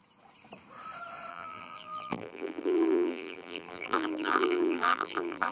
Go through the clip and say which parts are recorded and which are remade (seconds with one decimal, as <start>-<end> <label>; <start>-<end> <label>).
0.0-1.3 recorded; 1.3-5.5 remade